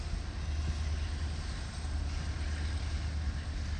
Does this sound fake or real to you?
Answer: real